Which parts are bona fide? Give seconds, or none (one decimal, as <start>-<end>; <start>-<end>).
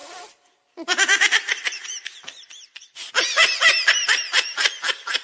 none